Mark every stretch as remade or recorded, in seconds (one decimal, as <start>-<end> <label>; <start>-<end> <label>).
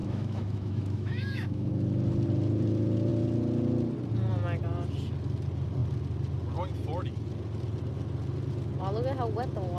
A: 0.0-1.7 remade; 1.7-9.8 recorded